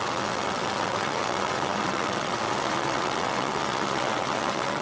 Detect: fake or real fake